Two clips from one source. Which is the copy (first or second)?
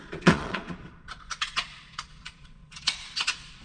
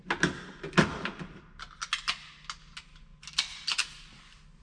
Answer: first